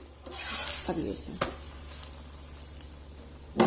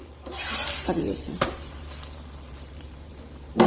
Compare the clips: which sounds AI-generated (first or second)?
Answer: second